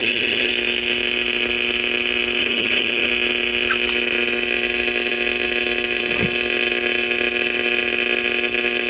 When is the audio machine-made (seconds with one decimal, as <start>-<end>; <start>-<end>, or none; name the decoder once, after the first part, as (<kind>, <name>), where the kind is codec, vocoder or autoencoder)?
0.0-0.5 (vocoder, HiFi-GAN); 2.4-3.1